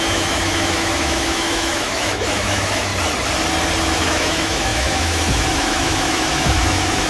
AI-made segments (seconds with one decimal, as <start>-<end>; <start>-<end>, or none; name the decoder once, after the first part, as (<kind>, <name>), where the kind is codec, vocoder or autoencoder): 0.0-2.9 (autoencoder, DAC-VAE); 3.8-7.1